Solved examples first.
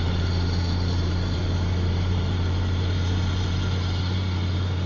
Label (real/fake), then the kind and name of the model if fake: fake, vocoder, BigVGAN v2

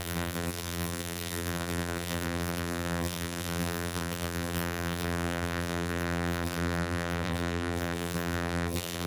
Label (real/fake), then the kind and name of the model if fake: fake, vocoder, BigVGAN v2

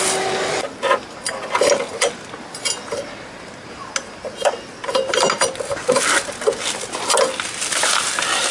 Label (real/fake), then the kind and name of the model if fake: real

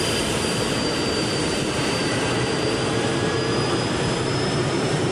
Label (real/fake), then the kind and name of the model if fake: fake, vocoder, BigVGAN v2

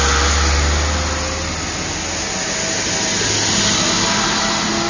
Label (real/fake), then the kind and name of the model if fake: real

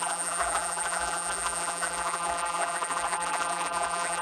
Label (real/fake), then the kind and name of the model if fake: fake, vocoder, BigVGAN v2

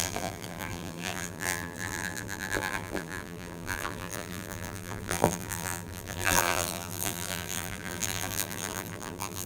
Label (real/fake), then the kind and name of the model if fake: fake, vocoder, BigVGAN v2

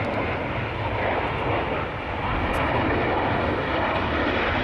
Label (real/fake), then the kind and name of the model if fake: real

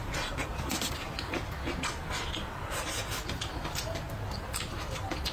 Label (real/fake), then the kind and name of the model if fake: real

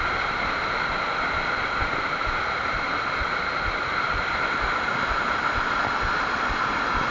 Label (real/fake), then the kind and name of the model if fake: fake, vocoder, BigVGAN v2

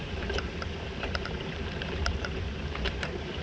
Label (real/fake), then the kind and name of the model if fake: fake, vocoder, BigVGAN v2